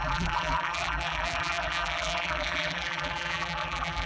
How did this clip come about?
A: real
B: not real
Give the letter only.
B